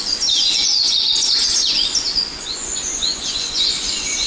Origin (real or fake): fake